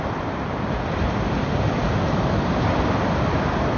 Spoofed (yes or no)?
no